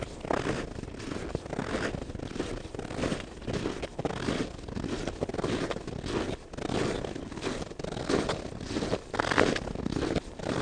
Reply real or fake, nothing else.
real